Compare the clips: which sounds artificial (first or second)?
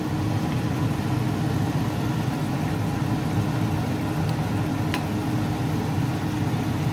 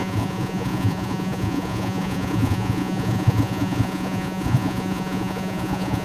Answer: second